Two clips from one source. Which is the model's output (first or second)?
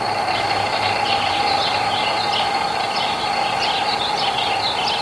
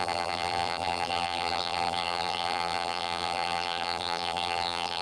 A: second